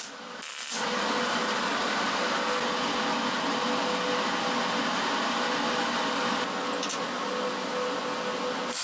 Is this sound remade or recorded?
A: recorded